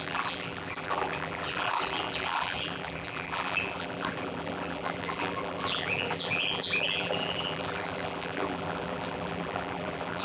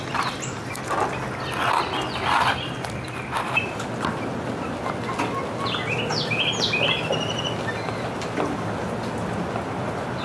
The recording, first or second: second